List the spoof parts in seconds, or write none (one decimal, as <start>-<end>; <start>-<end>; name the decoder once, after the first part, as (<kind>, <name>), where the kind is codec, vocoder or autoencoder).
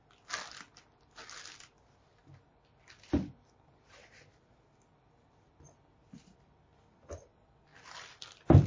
2.2-5.9 (vocoder, BigVGAN v2); 6.7-7.2; 7.7-8.7